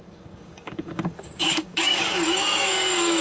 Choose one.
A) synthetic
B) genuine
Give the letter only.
A